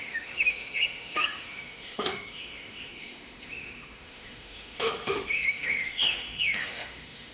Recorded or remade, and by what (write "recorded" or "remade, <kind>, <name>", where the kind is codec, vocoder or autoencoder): remade, autoencoder, DAC-VAE